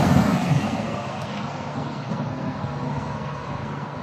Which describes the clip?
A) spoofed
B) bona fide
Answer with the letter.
A